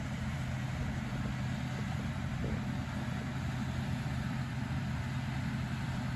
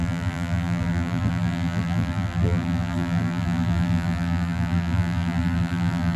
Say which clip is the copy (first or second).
second